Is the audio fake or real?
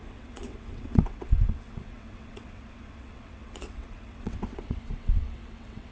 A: fake